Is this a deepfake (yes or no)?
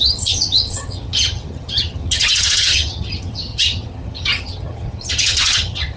yes